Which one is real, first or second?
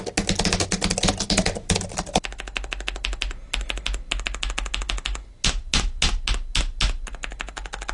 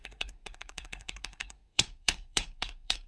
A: first